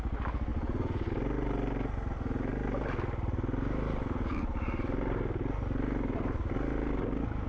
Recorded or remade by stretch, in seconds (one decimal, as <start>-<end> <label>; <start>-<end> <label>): 0.0-0.5 recorded; 0.5-1.1 remade; 1.1-7.5 recorded